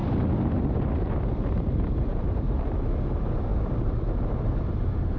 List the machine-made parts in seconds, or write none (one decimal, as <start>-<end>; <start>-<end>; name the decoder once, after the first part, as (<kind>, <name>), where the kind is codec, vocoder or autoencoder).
2.1-2.8 (vocoder, BigVGAN v2); 3.5-5.2